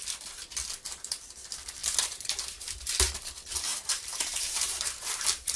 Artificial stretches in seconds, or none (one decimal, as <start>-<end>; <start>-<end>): 1.8-3.3; 3.7-5.6